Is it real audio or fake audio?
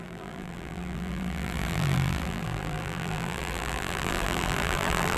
fake